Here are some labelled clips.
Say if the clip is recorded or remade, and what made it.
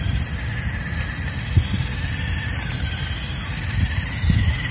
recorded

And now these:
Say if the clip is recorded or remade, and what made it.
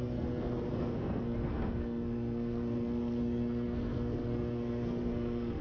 remade, codec, SNAC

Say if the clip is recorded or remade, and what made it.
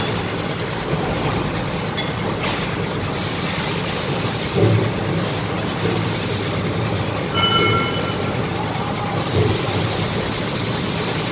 recorded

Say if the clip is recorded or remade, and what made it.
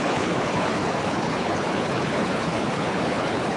remade, codec, HILCodec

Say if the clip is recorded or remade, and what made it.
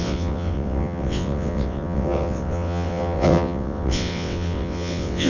remade, vocoder, WaveNeXt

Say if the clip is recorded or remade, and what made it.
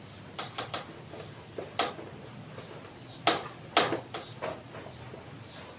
recorded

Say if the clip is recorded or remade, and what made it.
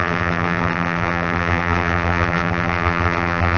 remade, vocoder, BigVGAN v2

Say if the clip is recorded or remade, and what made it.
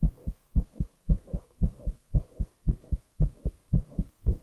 remade, codec, SNAC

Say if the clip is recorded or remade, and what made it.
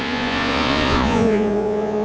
remade, vocoder, Vocos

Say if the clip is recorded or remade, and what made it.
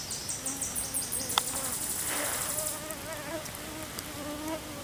recorded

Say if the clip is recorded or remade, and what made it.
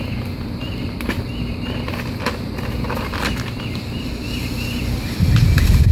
recorded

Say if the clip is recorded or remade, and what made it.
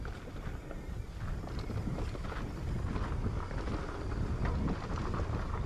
recorded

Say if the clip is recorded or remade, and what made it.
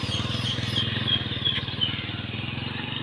recorded